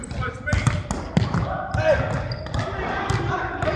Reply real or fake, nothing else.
real